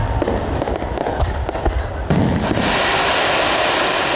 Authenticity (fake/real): real